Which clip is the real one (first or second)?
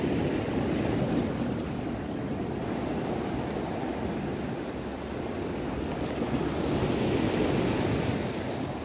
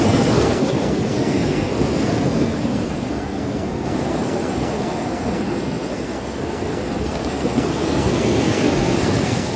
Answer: first